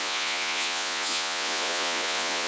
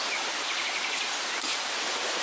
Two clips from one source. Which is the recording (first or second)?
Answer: second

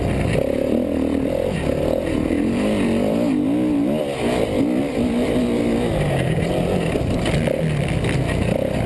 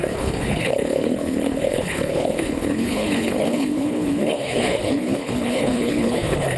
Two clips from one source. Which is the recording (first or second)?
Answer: first